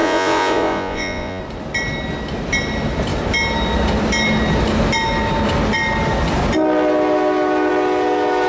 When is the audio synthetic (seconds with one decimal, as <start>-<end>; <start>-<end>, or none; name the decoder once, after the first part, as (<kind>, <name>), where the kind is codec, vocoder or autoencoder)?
0.0-1.4 (vocoder, Vocos)